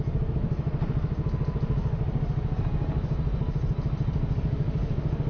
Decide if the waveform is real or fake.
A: real